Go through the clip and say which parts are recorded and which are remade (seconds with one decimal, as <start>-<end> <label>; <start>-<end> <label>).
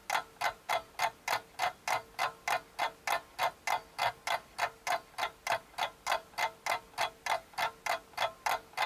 0.0-8.9 recorded